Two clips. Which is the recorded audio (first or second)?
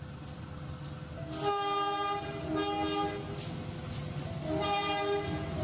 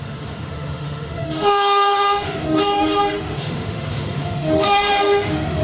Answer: first